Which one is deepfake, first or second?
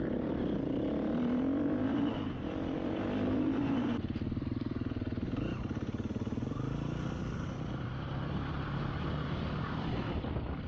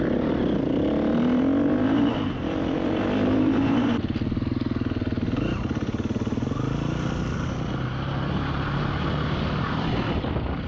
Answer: first